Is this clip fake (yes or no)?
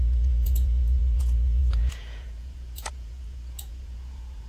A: yes